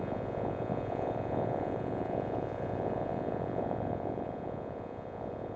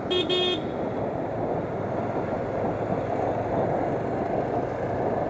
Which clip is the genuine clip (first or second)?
second